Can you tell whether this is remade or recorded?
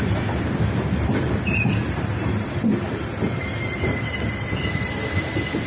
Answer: recorded